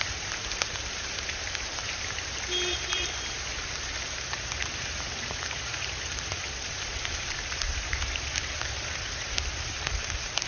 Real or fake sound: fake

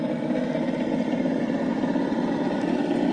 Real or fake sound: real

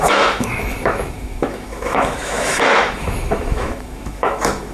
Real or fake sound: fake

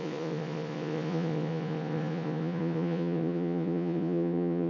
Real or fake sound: fake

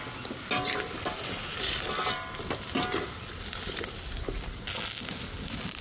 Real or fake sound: real